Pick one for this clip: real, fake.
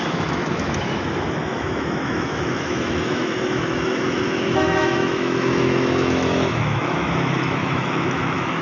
fake